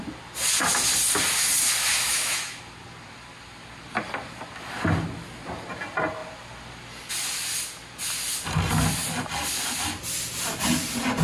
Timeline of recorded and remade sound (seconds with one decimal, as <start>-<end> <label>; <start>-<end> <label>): 0.0-1.9 recorded; 1.9-2.6 remade; 2.6-11.2 recorded